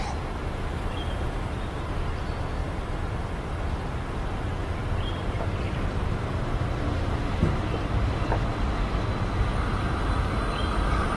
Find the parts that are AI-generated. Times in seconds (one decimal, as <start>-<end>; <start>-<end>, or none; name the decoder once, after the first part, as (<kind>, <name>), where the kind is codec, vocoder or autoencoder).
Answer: 2.6-3.7 (vocoder, BigVGAN v2); 4.6-8.8; 9.5-10.2